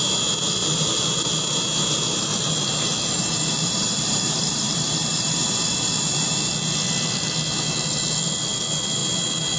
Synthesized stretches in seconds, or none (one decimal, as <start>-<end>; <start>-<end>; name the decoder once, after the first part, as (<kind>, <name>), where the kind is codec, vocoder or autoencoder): 0.6-1.4 (vocoder, BigVGAN v2); 2.3-6.5